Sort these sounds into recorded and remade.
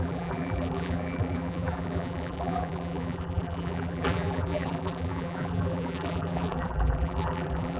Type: remade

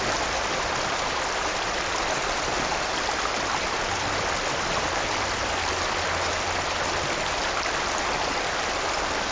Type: recorded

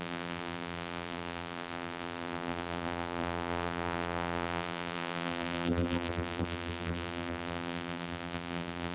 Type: remade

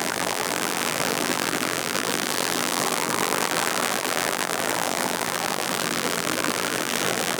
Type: remade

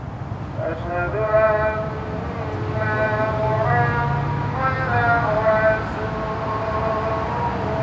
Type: recorded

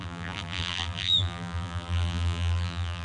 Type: remade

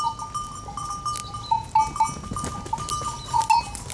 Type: recorded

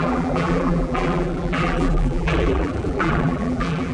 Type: remade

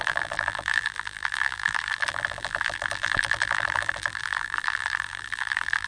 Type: remade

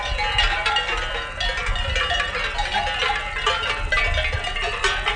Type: recorded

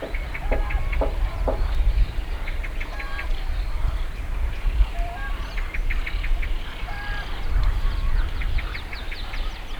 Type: remade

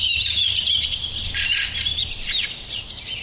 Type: remade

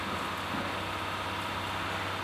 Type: recorded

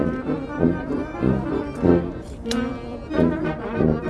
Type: remade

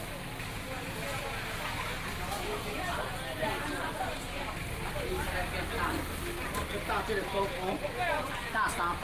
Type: recorded